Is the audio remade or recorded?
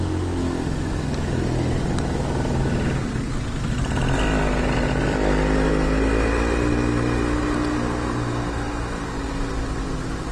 recorded